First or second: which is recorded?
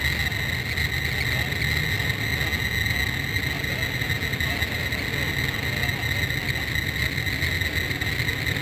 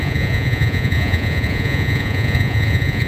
first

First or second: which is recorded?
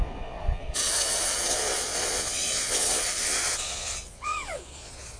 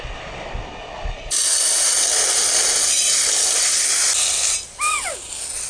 second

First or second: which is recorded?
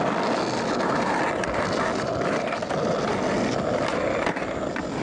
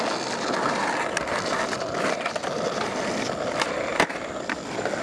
first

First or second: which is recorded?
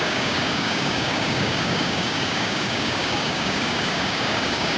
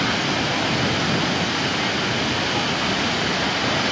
second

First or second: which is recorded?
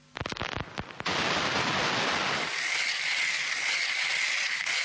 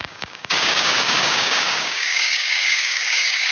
first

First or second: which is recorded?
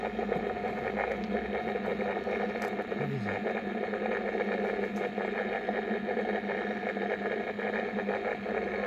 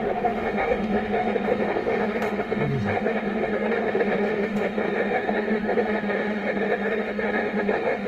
first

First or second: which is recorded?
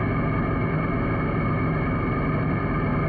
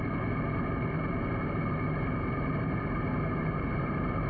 first